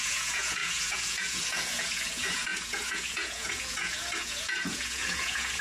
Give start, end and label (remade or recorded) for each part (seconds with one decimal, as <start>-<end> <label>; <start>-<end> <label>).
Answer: 0.0-5.6 remade